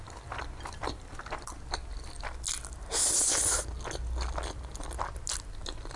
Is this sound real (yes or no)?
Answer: yes